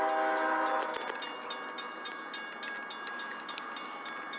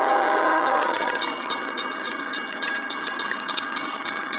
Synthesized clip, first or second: second